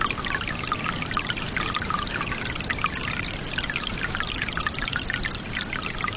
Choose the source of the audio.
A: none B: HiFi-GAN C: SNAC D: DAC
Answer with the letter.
A